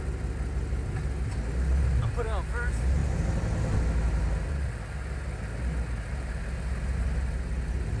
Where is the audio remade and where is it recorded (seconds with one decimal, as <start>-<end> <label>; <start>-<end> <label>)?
0.0-8.0 recorded